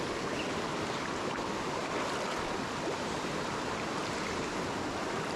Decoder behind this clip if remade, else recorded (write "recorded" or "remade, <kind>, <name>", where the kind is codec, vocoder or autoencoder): recorded